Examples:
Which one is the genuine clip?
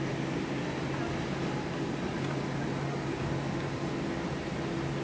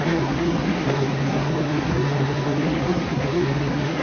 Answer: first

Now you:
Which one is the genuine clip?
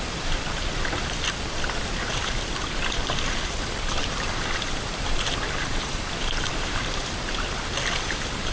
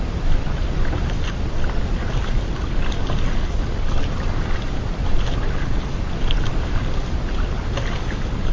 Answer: second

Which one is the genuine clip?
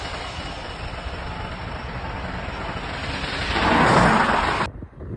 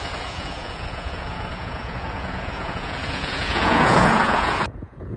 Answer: first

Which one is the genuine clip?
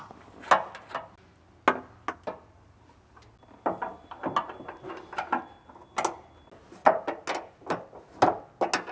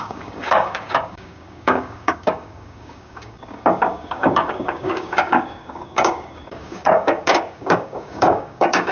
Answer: first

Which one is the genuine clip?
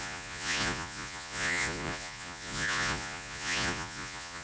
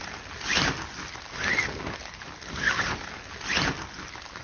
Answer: second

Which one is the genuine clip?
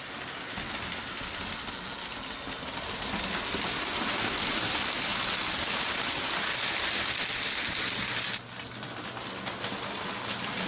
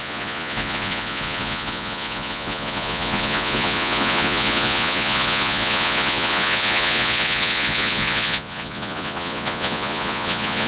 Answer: first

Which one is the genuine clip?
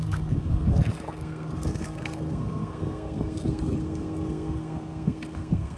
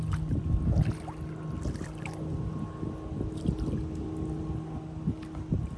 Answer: second